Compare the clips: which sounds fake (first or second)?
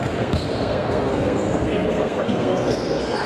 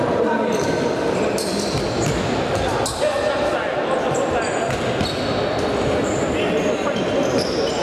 first